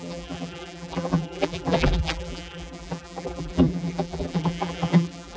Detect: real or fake fake